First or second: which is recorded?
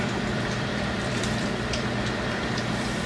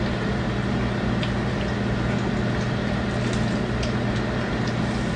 second